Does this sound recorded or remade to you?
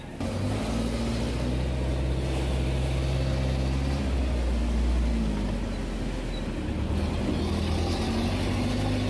recorded